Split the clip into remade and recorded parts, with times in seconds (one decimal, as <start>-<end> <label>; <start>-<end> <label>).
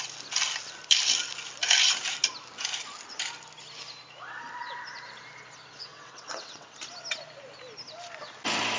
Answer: 0.0-5.9 recorded; 5.9-6.7 remade; 6.7-8.8 recorded